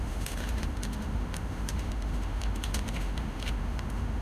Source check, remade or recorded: remade